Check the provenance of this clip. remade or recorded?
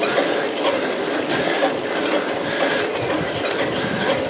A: recorded